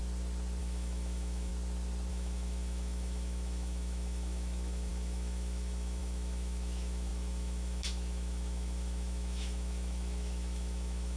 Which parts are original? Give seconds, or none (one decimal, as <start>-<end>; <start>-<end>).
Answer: 0.0-0.6; 1.5-2.1